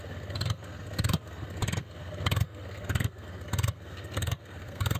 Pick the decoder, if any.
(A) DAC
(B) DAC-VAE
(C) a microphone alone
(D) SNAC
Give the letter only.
D